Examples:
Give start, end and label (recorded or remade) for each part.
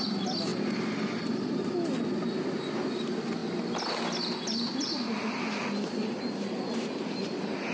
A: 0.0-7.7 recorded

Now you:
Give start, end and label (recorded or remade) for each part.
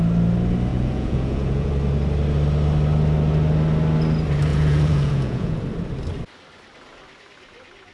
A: 0.0-0.7 recorded; 0.7-1.7 remade; 1.7-4.5 recorded; 4.5-5.6 remade; 5.6-7.9 recorded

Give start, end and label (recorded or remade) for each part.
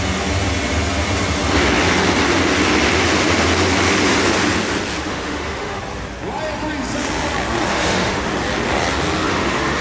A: 0.0-5.1 recorded; 5.1-5.8 remade; 5.8-7.7 recorded; 7.7-8.3 remade; 8.3-9.3 recorded; 9.3-9.8 remade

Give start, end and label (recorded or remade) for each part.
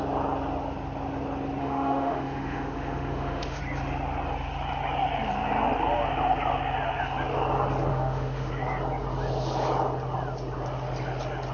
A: 0.0-1.6 recorded; 1.6-3.6 remade; 3.6-7.9 recorded; 7.9-8.5 remade; 8.5-11.5 recorded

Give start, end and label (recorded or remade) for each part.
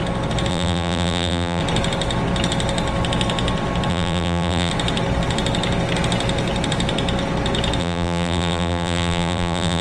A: 0.0-0.5 recorded; 0.5-1.6 remade; 1.6-3.9 recorded; 3.9-4.7 remade; 4.7-7.8 recorded; 7.8-9.8 remade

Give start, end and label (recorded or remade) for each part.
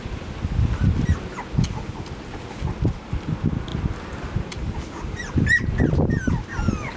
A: 0.0-7.0 recorded